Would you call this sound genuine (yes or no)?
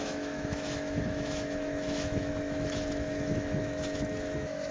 no